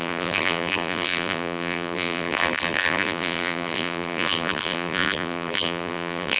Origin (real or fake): fake